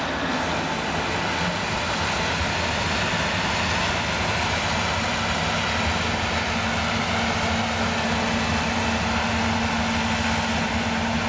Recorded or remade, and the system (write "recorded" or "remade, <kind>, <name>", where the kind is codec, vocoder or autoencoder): recorded